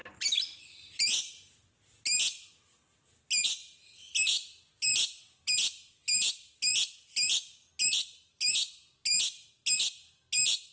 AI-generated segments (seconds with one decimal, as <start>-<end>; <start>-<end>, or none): none